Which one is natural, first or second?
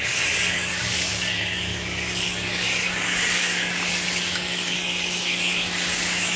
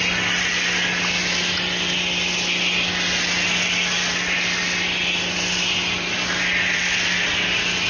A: second